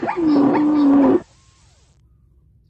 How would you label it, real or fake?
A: real